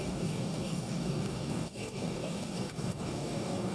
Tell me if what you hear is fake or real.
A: fake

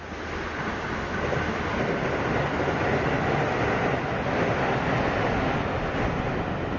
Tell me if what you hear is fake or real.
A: real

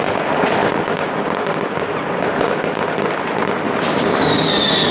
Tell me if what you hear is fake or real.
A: real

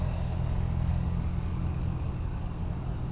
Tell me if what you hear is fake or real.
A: fake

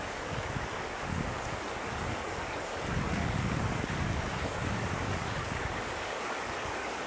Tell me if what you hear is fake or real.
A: fake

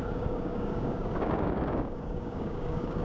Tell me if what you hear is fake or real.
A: fake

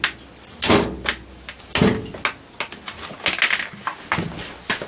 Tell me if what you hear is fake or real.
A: real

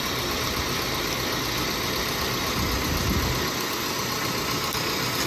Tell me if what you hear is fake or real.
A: real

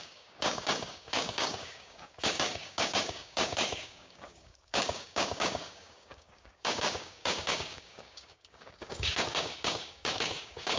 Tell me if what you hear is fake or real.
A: fake